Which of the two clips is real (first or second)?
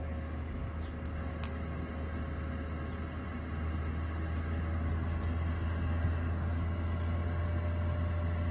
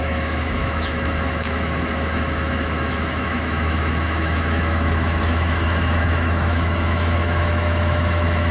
first